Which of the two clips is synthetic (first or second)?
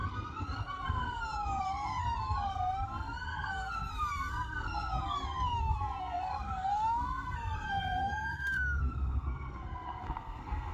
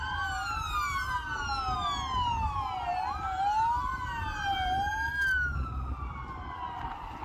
first